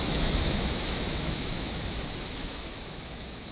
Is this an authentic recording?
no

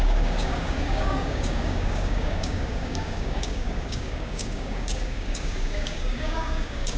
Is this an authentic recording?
no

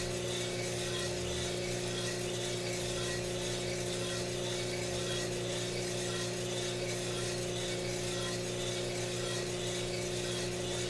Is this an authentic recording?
yes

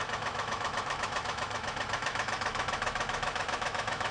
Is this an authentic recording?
no